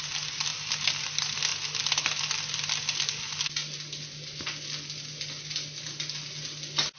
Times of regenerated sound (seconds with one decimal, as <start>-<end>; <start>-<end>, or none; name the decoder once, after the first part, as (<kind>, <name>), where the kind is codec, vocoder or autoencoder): none